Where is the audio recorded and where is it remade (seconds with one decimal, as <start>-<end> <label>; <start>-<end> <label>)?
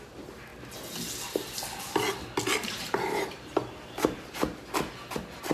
0.0-2.4 recorded; 2.4-4.6 remade; 4.6-5.5 recorded